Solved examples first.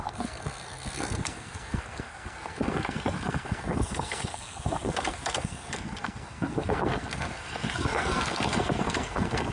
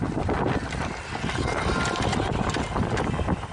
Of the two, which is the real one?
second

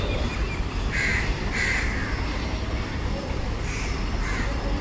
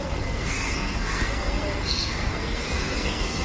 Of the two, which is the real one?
first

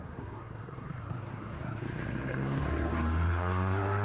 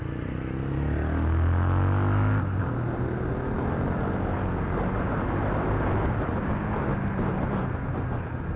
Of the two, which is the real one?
second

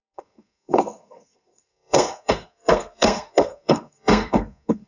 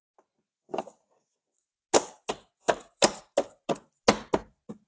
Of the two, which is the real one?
second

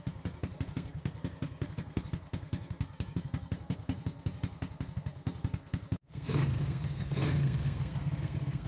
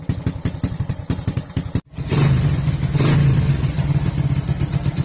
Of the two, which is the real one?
second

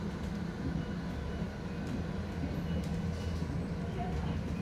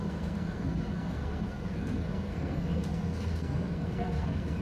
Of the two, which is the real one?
first